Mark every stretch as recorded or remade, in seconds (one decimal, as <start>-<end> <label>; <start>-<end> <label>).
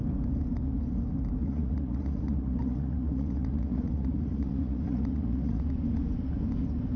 0.0-1.4 recorded; 1.4-5.6 remade; 5.6-7.0 recorded